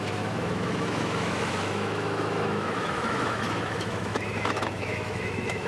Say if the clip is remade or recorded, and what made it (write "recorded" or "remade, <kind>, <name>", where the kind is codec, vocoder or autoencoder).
remade, autoencoder, DAC-VAE